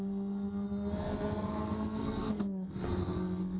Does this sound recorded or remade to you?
remade